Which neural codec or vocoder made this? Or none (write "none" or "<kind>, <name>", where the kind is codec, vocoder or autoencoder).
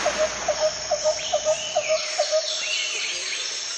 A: vocoder, BigVGAN v2